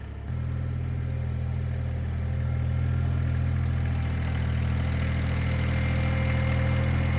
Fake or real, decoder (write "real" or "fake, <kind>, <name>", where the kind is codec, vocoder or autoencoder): real